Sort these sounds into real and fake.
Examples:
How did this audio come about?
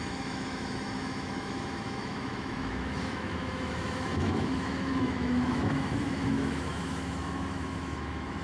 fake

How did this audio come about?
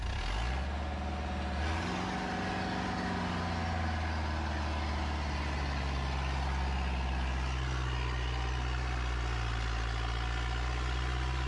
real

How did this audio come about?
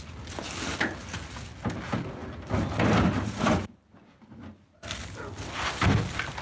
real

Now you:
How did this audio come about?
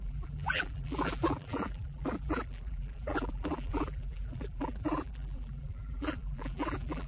fake